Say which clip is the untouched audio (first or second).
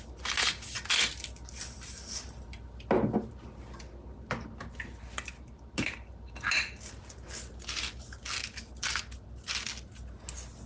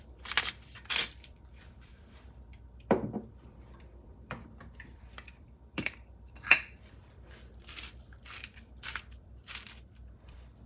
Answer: first